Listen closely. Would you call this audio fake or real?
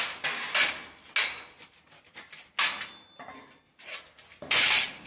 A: real